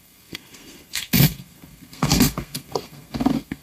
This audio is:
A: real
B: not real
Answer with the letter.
B